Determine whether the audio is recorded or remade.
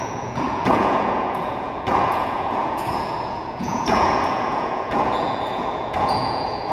remade